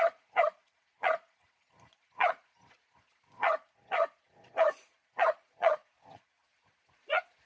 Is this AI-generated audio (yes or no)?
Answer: yes